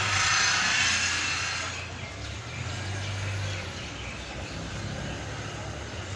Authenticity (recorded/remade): recorded